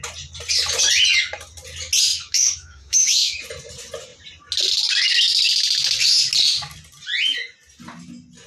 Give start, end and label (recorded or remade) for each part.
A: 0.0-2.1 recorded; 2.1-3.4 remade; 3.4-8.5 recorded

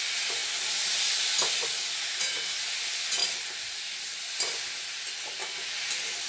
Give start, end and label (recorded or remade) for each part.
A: 0.0-3.2 recorded; 3.2-3.8 remade; 3.8-5.4 recorded; 5.4-6.3 remade

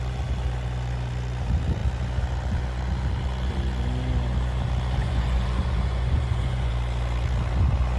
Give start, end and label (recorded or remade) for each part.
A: 0.0-5.0 recorded; 5.0-6.7 remade; 6.7-8.0 recorded

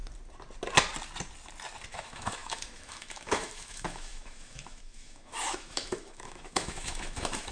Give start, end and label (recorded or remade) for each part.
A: 0.0-1.9 recorded; 1.9-7.5 remade

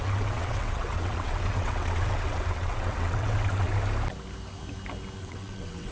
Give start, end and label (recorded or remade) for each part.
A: 0.0-3.7 remade; 3.7-5.2 recorded; 5.2-5.9 remade

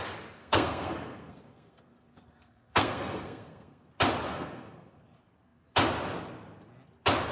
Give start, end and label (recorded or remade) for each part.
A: 0.0-0.4 recorded; 0.4-3.9 remade; 3.9-4.3 recorded; 4.3-5.0 remade; 5.0-7.3 recorded

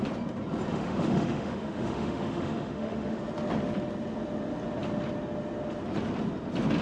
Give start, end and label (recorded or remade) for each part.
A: 0.0-0.7 recorded; 0.7-3.2 remade; 3.2-6.8 recorded

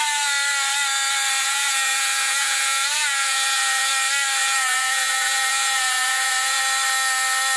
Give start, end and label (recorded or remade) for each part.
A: 0.0-1.4 recorded; 1.4-3.9 remade; 3.9-4.4 recorded; 4.4-6.6 remade; 6.6-7.6 recorded